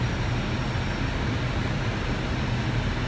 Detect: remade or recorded recorded